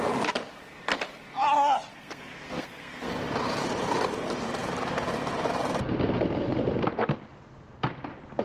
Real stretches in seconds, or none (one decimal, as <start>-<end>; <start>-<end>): 0.0-1.9; 3.1-8.4